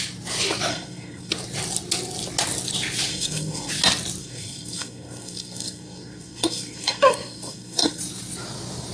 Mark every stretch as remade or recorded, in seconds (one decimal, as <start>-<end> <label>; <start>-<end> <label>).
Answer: 0.0-0.7 recorded; 0.7-1.3 remade; 1.3-3.1 recorded; 3.1-3.7 remade; 3.7-4.2 recorded; 4.2-8.0 remade; 8.0-8.9 recorded